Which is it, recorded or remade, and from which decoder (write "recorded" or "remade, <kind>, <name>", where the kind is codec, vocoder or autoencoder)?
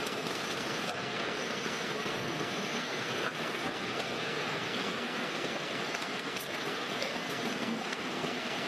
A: remade, codec, SNAC